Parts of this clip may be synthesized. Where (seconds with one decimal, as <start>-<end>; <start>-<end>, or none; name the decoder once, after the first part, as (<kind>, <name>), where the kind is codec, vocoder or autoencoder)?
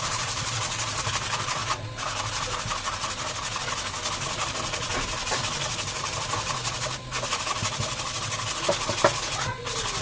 0.0-1.6 (vocoder, BigVGAN v2); 4.4-6.6